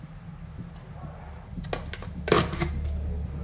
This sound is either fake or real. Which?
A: real